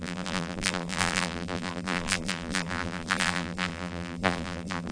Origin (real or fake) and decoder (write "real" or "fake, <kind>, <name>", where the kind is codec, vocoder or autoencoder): fake, vocoder, BigVGAN v2